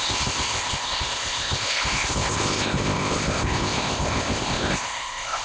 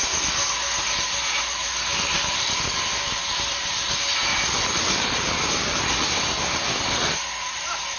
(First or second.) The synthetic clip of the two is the first